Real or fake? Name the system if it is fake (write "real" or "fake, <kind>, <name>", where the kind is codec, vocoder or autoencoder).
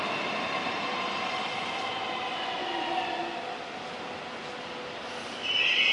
real